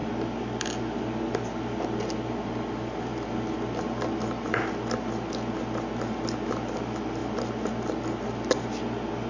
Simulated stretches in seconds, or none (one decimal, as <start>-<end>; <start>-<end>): none